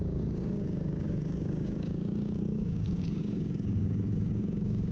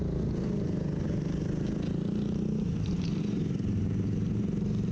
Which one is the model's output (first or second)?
first